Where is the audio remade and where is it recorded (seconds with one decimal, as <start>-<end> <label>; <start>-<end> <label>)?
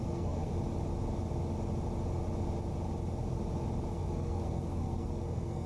0.0-0.5 remade; 0.5-3.9 recorded; 3.9-5.7 remade